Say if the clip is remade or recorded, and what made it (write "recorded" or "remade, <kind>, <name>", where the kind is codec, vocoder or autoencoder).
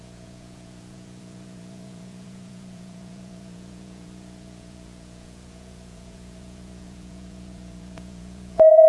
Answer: remade, vocoder, Vocos